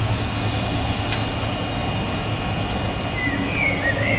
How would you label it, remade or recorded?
recorded